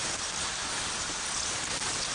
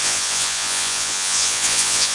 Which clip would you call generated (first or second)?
second